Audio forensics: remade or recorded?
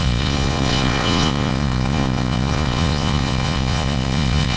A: remade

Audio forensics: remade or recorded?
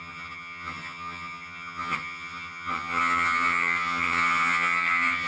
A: remade